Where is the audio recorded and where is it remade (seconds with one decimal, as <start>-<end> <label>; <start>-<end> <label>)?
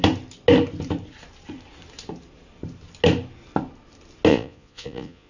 0.0-4.3 recorded; 4.3-5.3 remade